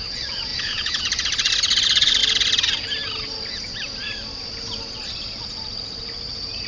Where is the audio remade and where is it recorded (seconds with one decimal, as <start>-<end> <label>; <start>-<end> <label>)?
0.0-0.5 recorded; 0.5-1.0 remade; 1.0-6.7 recorded